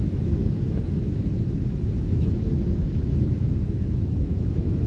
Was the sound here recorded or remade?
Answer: remade